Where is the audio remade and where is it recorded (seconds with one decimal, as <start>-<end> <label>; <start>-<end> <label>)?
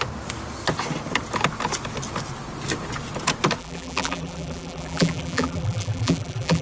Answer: 0.0-3.6 recorded; 3.6-6.6 remade